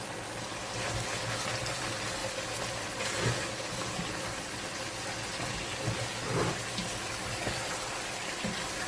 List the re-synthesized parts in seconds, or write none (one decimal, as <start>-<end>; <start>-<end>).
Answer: none